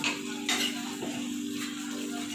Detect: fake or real real